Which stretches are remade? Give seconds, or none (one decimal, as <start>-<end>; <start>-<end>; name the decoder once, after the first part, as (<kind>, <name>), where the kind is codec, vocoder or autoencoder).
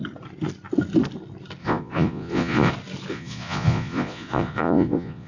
1.6-2.7 (vocoder, Vocos); 3.1-5.3